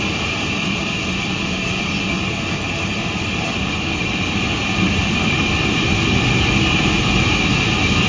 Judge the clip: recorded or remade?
recorded